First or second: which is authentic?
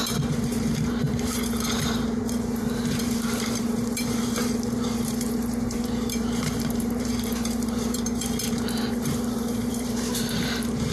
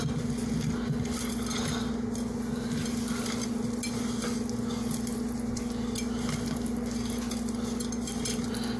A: second